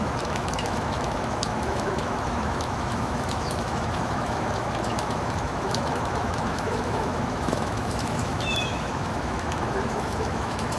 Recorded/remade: remade